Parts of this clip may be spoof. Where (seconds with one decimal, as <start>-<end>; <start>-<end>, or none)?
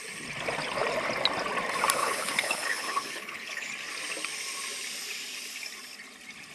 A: 2.0-3.7